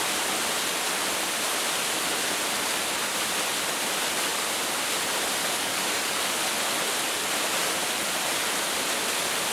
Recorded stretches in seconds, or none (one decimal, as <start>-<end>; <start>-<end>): 0.0-5.4; 6.3-9.5